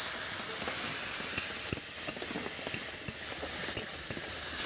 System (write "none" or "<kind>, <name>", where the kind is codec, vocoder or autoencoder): none